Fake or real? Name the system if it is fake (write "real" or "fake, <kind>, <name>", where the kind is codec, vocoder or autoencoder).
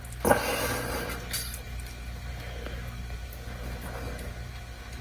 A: real